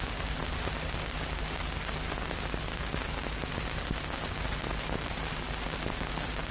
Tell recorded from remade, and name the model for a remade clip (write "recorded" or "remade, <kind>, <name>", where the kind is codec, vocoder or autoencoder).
recorded